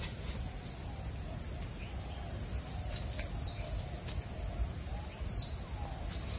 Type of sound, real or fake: real